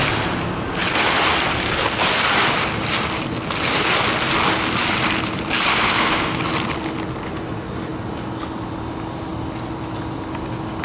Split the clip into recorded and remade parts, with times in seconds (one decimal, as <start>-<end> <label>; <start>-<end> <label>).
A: 0.0-5.7 recorded; 5.7-6.4 remade; 6.4-10.8 recorded